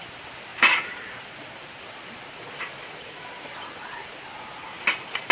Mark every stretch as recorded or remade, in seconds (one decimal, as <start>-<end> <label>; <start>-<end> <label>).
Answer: 0.0-0.5 recorded; 0.5-1.2 remade; 1.2-5.3 recorded